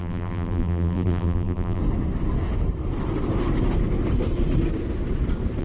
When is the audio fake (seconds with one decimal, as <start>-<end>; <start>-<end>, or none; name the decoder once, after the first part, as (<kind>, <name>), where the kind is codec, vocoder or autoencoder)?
0.0-1.8 (vocoder, BigVGAN v2)